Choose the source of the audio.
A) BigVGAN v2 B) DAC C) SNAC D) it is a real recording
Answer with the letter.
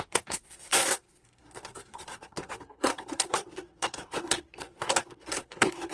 C